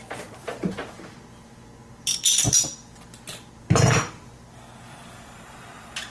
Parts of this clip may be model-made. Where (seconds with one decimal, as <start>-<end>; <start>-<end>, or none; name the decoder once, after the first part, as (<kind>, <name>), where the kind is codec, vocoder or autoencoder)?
0.0-0.8 (vocoder, BigVGAN v2); 4.1-6.1

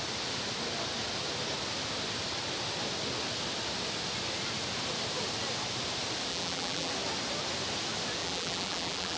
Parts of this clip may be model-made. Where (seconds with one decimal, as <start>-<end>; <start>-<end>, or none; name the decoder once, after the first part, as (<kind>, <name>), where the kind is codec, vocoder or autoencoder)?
6.3-6.9 (vocoder, BigVGAN v2); 8.2-9.2

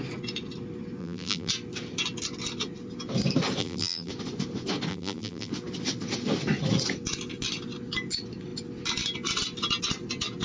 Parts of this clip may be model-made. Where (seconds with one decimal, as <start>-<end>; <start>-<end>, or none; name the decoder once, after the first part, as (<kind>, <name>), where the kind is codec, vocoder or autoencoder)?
1.0-1.5 (vocoder, BigVGAN v2); 3.6-4.1; 4.9-5.5

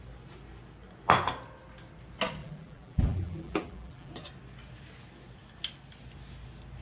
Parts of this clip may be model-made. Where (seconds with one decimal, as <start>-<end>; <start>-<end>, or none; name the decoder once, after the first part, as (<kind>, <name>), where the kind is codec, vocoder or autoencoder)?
2.4-4.1 (vocoder, BigVGAN v2)

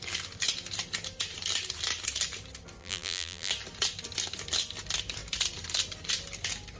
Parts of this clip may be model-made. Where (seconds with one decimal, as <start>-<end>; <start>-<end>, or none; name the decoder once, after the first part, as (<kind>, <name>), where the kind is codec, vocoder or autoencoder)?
2.8-3.5 (vocoder, BigVGAN v2)